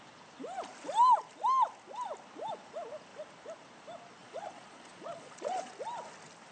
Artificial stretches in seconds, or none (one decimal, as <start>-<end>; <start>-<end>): 4.2-5.7